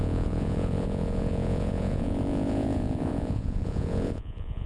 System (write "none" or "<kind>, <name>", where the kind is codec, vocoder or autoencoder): vocoder, Vocos